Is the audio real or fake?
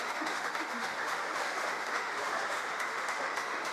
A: fake